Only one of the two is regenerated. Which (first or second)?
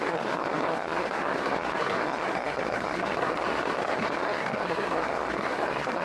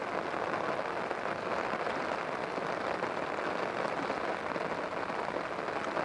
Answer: first